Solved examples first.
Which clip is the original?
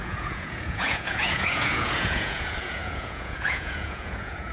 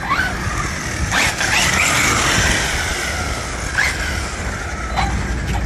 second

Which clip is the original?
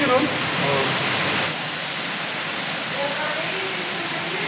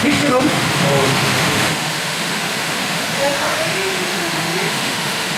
first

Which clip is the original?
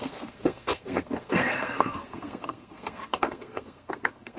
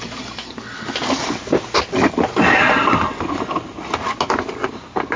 second